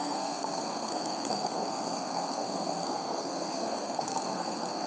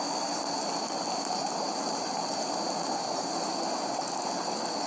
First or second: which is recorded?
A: second